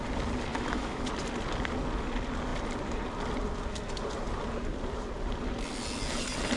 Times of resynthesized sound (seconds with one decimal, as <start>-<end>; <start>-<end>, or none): 0.5-1.1